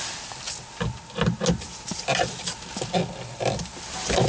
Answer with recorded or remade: recorded